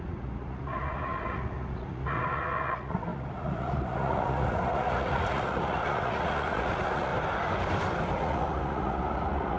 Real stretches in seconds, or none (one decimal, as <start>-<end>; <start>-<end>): 7.1-8.2